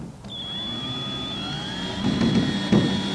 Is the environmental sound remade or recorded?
recorded